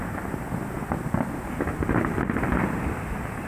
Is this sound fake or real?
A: real